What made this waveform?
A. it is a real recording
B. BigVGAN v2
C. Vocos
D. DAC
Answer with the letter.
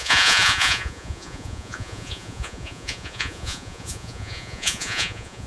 C